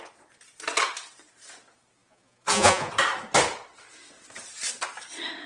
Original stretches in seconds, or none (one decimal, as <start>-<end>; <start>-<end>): 0.0-2.0; 2.9-5.5